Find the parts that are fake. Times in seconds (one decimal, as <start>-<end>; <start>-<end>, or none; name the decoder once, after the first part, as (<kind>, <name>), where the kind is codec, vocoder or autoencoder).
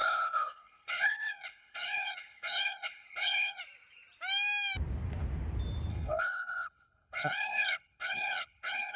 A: 0.0-3.6 (codec, HILCodec); 5.9-9.0